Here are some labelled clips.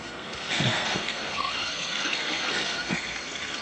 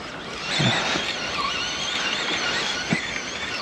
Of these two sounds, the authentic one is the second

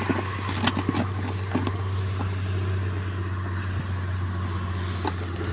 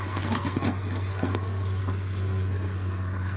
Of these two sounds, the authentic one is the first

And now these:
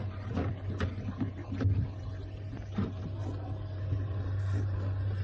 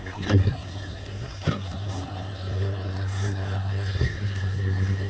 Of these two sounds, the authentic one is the first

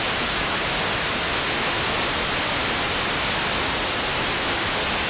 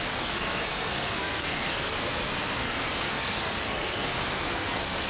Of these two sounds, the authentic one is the first